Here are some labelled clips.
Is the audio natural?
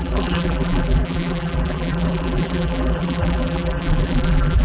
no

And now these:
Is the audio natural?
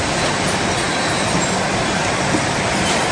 no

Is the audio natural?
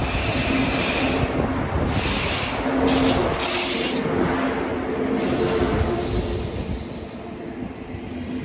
yes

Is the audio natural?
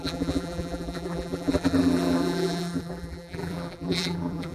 no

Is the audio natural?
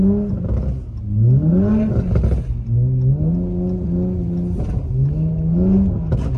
yes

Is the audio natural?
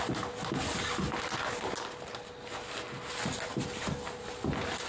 yes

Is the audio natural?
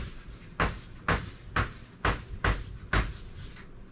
yes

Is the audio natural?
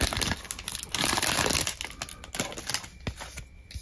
yes